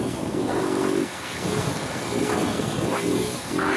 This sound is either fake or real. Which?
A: fake